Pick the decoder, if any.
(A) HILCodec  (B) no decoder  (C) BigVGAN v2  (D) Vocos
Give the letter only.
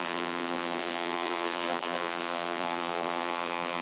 C